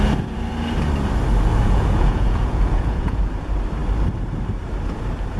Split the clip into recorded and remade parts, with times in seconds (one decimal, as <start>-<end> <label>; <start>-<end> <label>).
0.0-1.5 recorded; 1.5-3.2 remade; 3.2-5.4 recorded